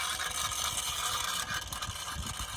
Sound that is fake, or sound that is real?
real